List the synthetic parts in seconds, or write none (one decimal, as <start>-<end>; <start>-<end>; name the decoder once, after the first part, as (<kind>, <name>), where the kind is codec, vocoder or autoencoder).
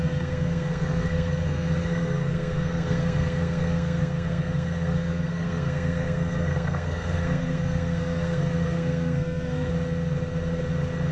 0.0-9.7 (codec, SNAC)